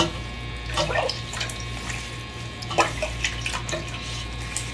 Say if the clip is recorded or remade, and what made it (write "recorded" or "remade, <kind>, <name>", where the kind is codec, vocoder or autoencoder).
recorded